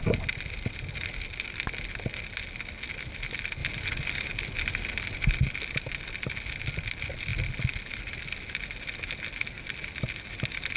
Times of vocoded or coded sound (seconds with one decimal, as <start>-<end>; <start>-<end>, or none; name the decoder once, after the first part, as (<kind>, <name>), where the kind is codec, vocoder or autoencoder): none